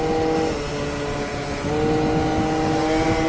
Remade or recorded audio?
recorded